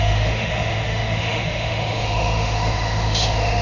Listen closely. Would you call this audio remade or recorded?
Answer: remade